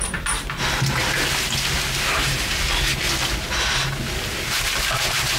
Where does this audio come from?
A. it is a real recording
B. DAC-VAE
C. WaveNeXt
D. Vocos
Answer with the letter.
A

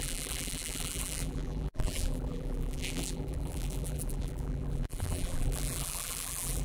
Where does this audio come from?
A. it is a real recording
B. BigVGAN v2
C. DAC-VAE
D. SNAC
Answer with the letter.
B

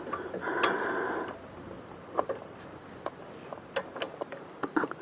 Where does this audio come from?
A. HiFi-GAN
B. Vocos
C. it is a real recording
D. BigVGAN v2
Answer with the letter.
C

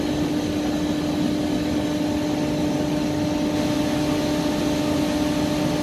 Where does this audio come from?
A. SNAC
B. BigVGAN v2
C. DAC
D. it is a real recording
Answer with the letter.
D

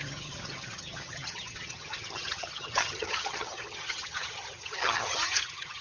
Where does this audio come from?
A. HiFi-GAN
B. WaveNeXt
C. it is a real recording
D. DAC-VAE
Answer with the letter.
A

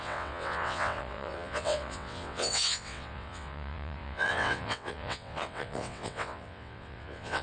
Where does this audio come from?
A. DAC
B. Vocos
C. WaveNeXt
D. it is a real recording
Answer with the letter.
C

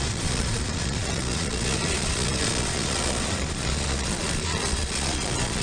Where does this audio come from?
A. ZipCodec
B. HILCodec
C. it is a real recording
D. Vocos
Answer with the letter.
D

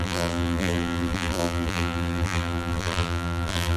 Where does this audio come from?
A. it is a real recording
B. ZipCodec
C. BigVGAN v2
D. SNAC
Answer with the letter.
C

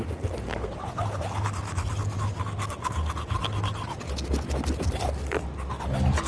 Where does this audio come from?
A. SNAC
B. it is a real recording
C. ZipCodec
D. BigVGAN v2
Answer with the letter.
B